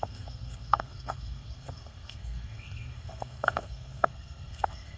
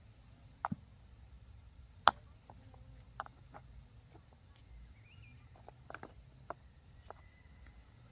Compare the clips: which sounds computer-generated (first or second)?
first